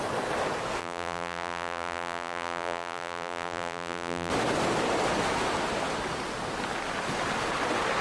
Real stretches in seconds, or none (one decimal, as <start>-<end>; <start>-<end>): 0.0-0.8; 4.3-8.0